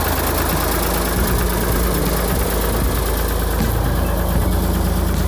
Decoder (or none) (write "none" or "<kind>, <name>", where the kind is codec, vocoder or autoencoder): none